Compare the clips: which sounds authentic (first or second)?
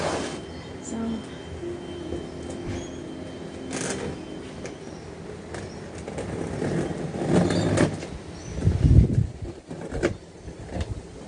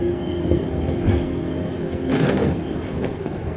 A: first